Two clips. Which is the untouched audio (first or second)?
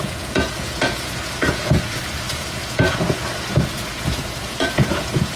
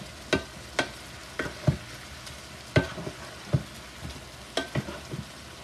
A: second